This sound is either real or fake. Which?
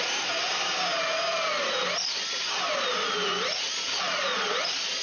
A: real